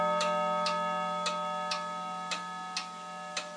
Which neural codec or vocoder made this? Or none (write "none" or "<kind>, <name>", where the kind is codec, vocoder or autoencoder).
none